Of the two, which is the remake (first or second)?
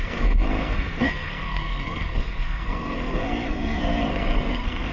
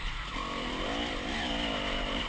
first